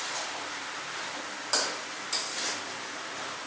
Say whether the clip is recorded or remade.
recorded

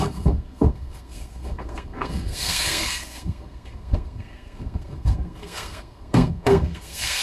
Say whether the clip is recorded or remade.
remade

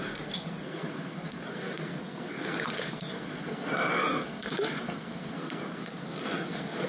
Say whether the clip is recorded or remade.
remade